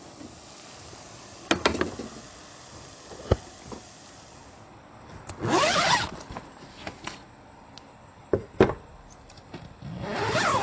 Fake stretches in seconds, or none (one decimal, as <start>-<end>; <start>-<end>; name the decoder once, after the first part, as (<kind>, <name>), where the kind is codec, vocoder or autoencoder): none